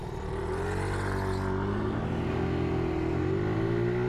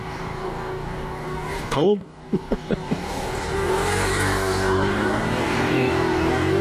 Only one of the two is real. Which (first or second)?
first